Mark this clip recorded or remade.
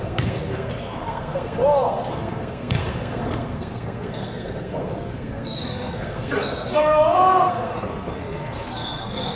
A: remade